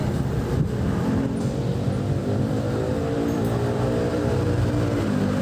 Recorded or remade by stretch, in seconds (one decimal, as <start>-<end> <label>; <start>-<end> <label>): 0.0-0.6 remade; 0.6-2.2 recorded; 2.2-4.7 remade; 4.7-5.4 recorded